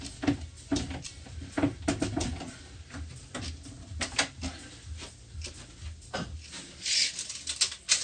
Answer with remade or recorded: recorded